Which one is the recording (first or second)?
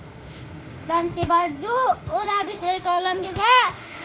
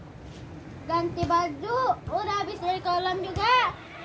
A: second